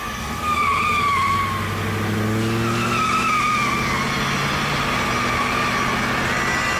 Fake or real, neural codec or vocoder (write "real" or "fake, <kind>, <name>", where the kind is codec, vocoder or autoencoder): real